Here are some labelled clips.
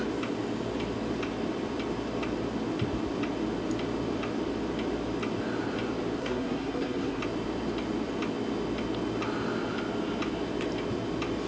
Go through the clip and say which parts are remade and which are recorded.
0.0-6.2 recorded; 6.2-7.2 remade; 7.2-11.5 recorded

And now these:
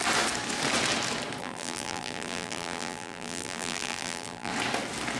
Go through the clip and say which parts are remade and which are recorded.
0.0-1.4 recorded; 1.4-4.5 remade; 4.5-5.2 recorded

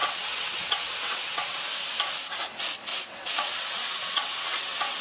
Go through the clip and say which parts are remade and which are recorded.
0.0-1.6 remade; 1.6-2.9 recorded; 2.9-5.0 remade

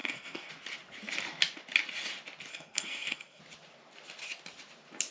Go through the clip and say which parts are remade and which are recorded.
0.0-0.5 remade; 0.5-2.5 recorded; 2.5-3.4 remade; 3.4-5.1 recorded

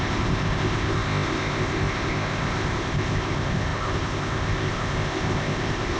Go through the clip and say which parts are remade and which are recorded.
0.0-6.0 remade